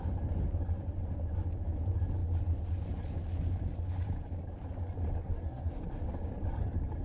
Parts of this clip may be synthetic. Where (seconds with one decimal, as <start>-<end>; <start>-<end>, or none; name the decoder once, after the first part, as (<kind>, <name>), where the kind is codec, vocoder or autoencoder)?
5.2-5.8 (codec, SNAC)